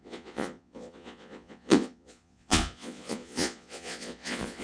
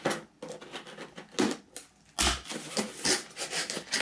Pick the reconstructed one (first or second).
first